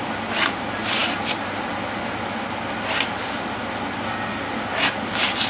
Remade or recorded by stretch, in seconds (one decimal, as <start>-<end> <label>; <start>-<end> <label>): 0.0-5.5 recorded